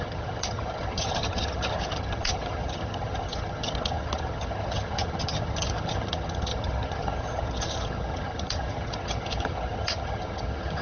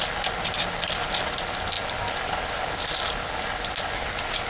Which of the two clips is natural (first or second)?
second